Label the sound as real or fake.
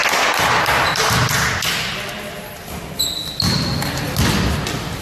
real